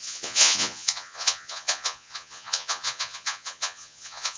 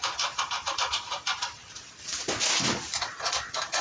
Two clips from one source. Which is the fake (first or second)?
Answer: first